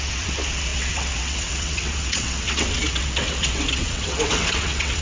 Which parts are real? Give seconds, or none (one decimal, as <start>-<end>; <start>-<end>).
none